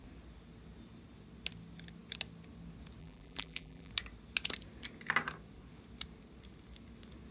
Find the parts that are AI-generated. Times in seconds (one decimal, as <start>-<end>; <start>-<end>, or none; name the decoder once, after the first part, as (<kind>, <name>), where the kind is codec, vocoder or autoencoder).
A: 3.0-3.9 (vocoder, BigVGAN v2)